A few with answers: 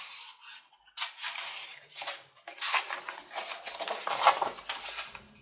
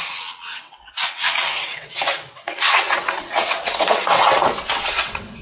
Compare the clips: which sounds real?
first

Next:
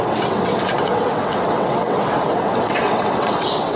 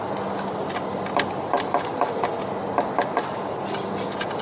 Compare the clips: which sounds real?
second